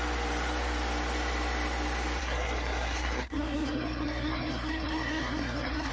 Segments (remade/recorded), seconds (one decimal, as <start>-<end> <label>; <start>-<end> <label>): 0.0-2.2 recorded; 2.2-5.9 remade